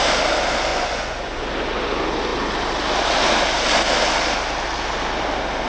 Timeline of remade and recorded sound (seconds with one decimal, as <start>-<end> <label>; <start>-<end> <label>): 0.0-0.7 recorded; 0.7-1.4 remade; 1.4-5.7 recorded